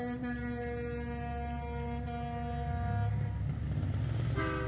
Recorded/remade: recorded